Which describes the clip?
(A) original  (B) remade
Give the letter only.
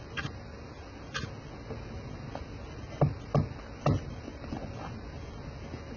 A